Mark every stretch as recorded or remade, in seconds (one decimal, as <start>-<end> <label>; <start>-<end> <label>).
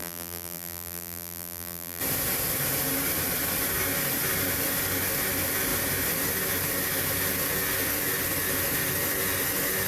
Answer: 0.0-2.0 remade; 2.0-9.9 recorded